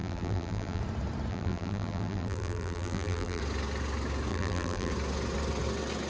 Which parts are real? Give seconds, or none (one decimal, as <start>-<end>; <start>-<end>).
0.8-1.3; 3.4-4.3; 4.9-6.1